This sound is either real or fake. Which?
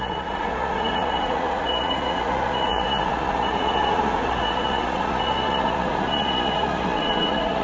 fake